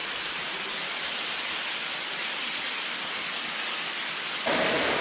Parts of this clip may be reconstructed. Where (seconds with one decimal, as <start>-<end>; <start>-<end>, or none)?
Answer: none

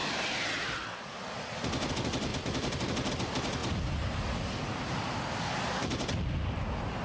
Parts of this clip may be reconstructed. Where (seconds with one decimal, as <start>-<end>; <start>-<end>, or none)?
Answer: 0.0-1.9; 2.3-3.1

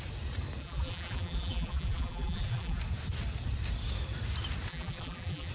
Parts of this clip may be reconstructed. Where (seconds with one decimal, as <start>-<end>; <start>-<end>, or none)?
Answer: 0.6-2.8; 4.7-5.5

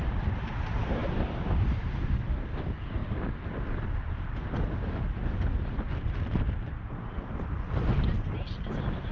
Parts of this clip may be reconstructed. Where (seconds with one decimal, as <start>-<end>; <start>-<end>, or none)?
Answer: none

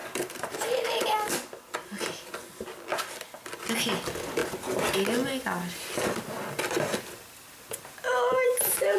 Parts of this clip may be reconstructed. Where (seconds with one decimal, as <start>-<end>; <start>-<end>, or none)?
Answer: 0.0-1.3

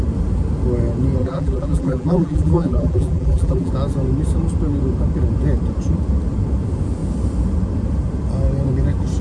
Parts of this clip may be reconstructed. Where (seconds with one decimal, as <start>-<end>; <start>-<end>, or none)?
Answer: 1.2-3.7

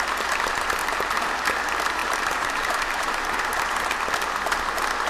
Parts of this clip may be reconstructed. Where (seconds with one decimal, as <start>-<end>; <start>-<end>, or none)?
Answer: 0.8-1.3; 2.0-3.4